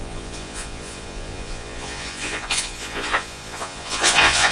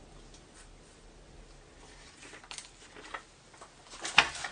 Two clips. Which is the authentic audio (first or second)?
second